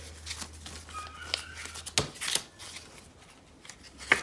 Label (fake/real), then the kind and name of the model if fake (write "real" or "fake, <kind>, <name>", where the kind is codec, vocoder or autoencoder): real